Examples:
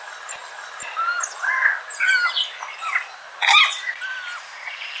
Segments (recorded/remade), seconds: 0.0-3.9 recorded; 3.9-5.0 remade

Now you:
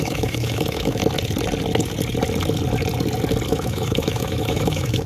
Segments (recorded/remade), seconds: 0.0-1.0 remade; 1.0-3.5 recorded; 3.5-5.1 remade